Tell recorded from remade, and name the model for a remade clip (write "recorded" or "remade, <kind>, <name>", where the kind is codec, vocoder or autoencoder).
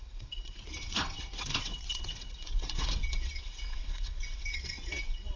remade, vocoder, WaveNeXt